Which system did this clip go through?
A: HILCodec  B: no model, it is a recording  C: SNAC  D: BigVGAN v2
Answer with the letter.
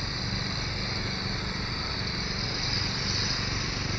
B